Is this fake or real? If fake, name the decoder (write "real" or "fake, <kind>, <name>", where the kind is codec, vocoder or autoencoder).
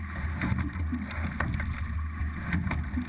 real